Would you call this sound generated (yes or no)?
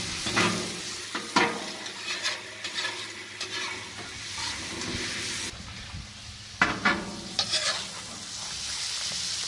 no